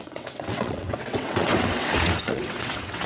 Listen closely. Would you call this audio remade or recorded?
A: remade